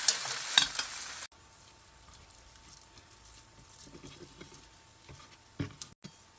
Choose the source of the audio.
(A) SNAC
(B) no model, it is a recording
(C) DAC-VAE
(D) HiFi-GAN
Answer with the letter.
B